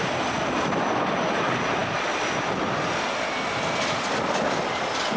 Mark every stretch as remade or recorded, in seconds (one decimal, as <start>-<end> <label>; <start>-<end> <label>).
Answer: 0.0-5.2 recorded